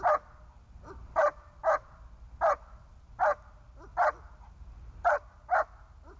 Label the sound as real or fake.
real